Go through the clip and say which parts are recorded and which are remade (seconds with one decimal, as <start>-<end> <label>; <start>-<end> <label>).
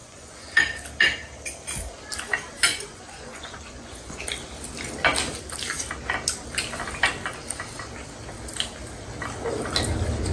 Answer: 0.0-0.6 remade; 0.6-2.7 recorded; 2.7-4.2 remade; 4.2-10.3 recorded